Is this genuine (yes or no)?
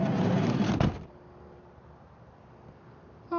yes